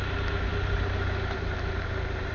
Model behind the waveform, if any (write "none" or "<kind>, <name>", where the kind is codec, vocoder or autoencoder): none